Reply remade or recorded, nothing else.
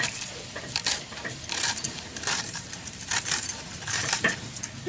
remade